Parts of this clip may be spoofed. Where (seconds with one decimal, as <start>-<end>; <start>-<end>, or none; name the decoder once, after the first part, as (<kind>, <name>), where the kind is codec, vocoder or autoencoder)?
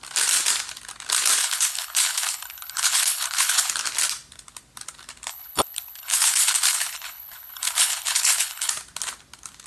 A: 1.4-3.7 (codec, HILCodec); 5.3-8.7